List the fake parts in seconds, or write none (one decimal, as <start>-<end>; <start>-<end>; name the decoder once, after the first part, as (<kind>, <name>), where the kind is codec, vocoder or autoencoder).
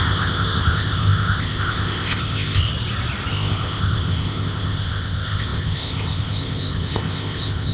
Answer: 0.0-2.7 (codec, ZipCodec); 3.3-7.7